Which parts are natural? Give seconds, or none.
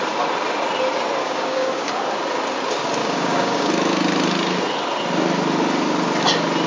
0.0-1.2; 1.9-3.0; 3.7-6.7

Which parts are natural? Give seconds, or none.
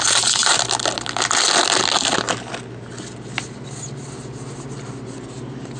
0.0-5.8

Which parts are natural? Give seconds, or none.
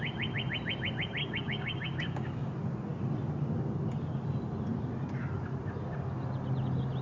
0.0-1.2; 2.5-7.0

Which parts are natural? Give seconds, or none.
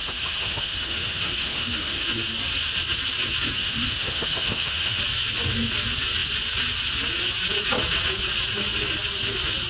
2.0-3.6; 5.0-9.7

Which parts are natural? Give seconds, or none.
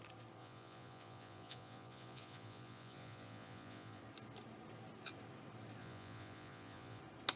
0.0-0.4; 4.0-5.8; 7.0-7.4